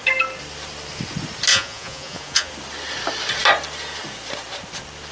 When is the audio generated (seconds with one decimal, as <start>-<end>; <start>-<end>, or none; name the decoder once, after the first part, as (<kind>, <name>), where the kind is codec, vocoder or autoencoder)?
1.5-2.5 (vocoder, Vocos)